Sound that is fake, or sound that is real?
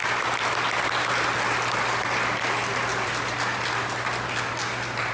real